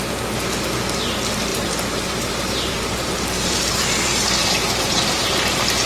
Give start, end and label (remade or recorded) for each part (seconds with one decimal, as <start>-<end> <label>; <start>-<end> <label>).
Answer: 0.0-1.5 recorded; 1.5-3.8 remade; 3.8-4.4 recorded; 4.4-5.9 remade